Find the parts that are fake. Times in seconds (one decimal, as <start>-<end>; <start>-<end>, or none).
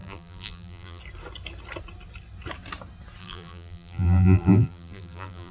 0.0-1.0; 3.2-5.5